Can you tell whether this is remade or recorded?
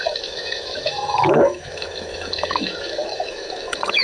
remade